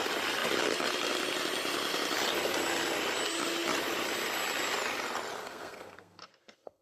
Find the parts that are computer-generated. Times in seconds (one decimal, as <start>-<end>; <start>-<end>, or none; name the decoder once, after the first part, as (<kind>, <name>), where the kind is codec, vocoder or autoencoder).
5.4-6.8 (codec, SNAC)